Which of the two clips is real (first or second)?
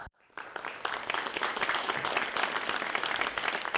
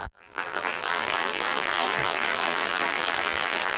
first